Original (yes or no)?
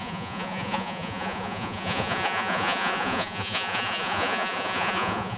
no